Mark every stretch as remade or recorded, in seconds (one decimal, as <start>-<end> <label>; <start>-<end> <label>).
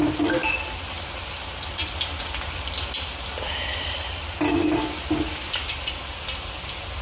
0.0-7.0 recorded